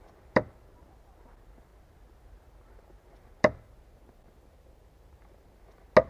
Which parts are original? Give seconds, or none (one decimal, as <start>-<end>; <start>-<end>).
0.0-6.1